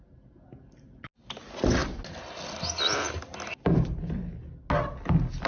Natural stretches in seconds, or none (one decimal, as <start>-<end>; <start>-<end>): 0.0-5.5